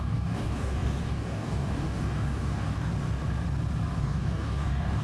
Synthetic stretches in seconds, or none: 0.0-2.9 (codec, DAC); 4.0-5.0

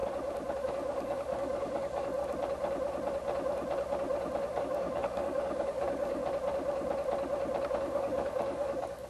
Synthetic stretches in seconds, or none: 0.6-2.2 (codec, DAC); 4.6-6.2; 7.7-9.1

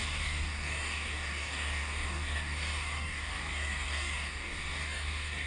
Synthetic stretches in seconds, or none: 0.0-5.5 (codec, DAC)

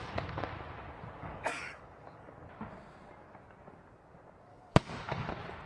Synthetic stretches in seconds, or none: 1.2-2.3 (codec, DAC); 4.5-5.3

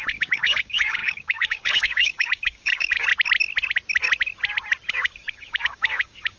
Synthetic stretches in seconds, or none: 0.0-3.1 (codec, DAC); 4.9-6.4

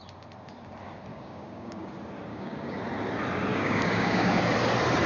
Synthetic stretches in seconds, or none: 1.1-1.9 (codec, DAC); 2.3-2.8; 3.5-4.4

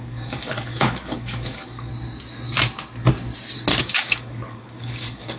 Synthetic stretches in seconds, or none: 0.0-1.9 (codec, DAC); 3.8-5.4